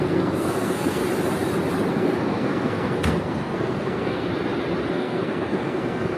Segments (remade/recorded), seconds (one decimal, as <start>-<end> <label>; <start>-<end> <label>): 0.0-1.0 remade; 1.0-1.9 recorded; 1.9-4.3 remade; 4.3-4.9 recorded; 4.9-6.2 remade